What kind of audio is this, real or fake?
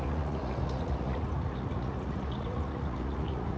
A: fake